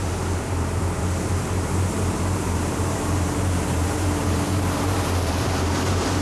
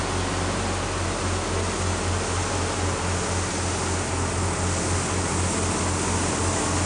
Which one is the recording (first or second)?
second